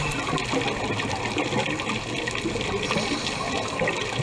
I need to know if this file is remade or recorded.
recorded